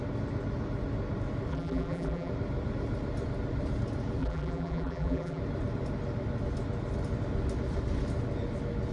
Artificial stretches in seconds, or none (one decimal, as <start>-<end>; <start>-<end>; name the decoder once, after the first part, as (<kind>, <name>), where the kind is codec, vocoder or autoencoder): 1.5-2.3 (vocoder, BigVGAN v2); 4.2-5.4